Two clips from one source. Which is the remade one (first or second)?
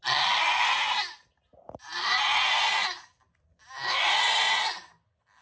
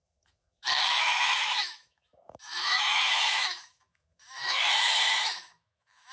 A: second